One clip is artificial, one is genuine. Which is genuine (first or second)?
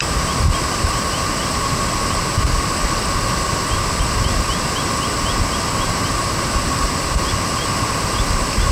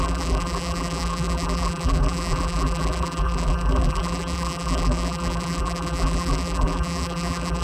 first